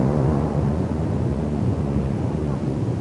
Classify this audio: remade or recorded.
remade